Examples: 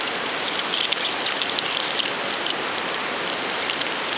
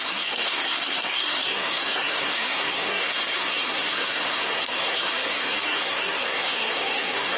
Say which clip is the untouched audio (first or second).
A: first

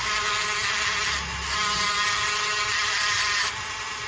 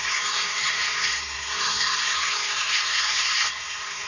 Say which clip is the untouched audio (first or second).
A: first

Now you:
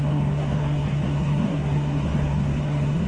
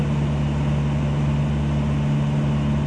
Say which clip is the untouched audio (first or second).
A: second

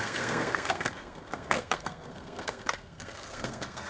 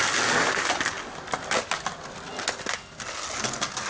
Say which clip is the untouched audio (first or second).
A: second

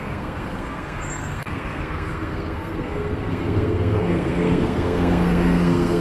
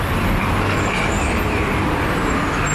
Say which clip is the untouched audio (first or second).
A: second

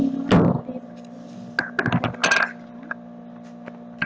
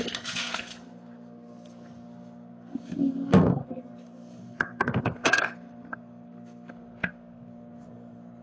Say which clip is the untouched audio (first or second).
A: first